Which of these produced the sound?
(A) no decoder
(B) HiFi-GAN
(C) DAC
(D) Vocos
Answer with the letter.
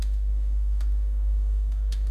C